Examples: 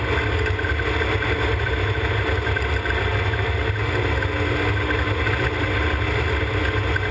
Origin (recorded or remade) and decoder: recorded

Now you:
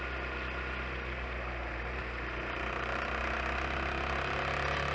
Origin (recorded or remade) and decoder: recorded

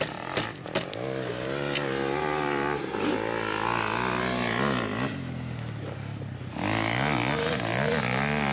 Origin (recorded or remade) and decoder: recorded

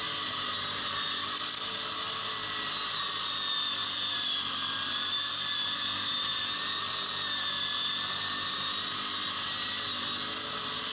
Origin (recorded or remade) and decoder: recorded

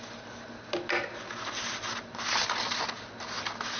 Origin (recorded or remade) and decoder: recorded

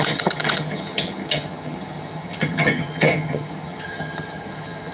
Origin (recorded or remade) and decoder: remade, vocoder, HiFi-GAN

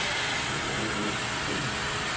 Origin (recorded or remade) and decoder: recorded